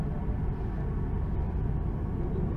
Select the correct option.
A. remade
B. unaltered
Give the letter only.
B